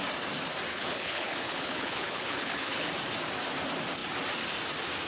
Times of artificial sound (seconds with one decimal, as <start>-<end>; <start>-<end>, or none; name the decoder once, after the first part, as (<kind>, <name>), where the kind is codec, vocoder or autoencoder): 0.7-2.9 (codec, HILCodec)